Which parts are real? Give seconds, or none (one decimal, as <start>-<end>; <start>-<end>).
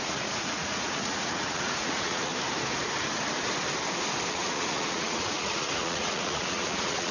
2.3-4.3